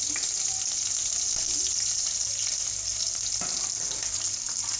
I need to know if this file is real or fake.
real